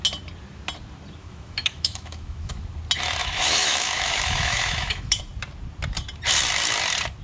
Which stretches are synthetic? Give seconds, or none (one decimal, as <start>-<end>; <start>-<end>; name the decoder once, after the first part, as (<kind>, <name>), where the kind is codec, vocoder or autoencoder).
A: 1.2-2.5 (autoencoder, DAC-VAE); 3.2-5.2